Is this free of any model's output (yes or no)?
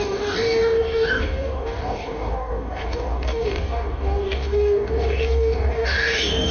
no